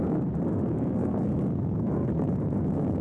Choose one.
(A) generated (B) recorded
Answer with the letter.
A